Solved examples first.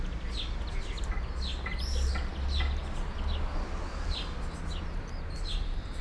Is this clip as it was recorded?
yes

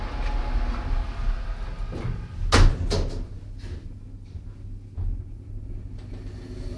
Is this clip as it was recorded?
yes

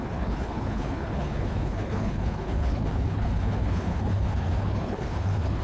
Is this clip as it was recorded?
no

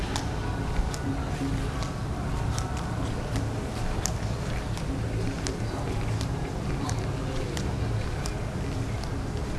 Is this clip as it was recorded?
yes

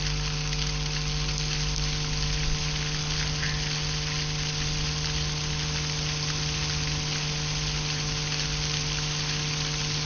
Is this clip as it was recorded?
yes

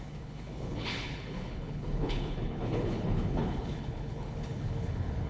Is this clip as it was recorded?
no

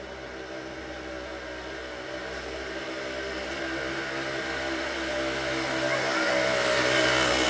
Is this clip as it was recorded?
yes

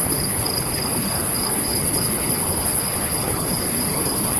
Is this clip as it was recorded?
no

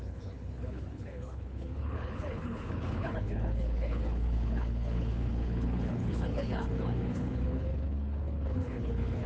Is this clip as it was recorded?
no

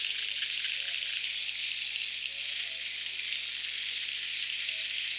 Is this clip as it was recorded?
yes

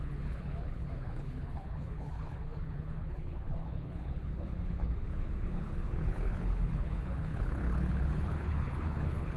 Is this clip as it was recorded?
no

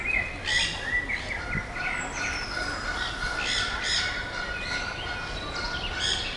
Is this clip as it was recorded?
yes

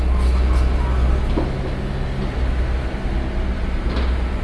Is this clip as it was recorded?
yes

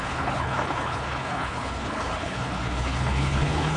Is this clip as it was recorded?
no